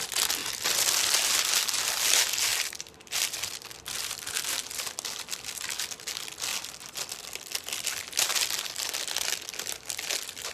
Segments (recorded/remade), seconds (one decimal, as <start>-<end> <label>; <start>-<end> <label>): 0.0-2.5 recorded; 2.5-4.1 remade; 4.1-8.3 recorded; 8.3-9.3 remade; 9.3-10.5 recorded